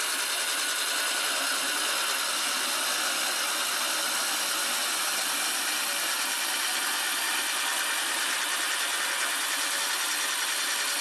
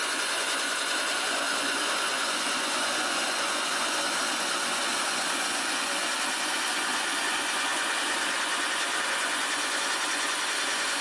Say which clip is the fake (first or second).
second